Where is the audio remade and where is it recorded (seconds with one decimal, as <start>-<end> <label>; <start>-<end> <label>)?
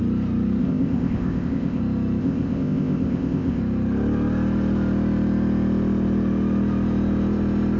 0.0-0.6 recorded; 0.6-1.8 remade; 1.8-2.2 recorded; 2.2-3.6 remade; 3.6-7.8 recorded